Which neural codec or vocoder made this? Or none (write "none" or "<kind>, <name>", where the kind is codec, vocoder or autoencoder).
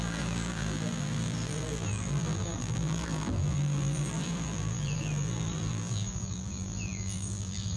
vocoder, BigVGAN v2